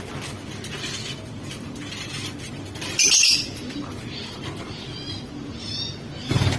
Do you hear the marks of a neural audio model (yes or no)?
no